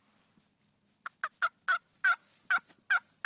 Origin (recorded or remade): recorded